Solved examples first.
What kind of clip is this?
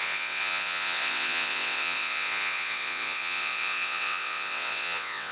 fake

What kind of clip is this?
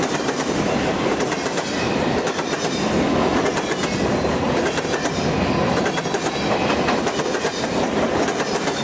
real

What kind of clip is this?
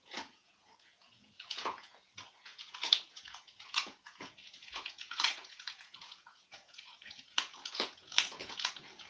fake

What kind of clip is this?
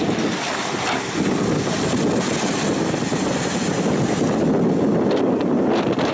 real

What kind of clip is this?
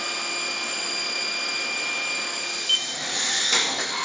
real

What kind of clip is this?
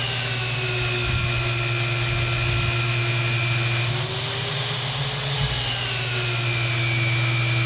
real